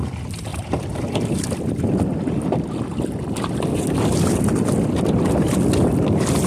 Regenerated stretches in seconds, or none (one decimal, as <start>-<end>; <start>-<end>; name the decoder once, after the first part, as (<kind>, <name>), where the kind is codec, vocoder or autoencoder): none